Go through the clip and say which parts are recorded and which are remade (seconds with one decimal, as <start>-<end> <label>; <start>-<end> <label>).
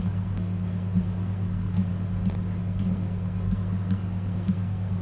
0.0-1.9 remade; 1.9-2.6 recorded; 2.6-5.0 remade